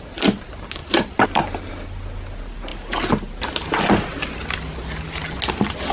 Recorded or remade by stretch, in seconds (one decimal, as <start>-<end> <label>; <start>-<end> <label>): 0.0-0.8 recorded; 0.8-1.7 remade; 1.7-5.9 recorded